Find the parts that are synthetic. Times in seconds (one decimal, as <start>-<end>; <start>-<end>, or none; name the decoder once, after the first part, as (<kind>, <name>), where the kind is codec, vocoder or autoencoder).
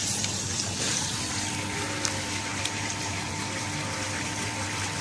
0.0-1.3 (vocoder, BigVGAN v2); 2.5-3.4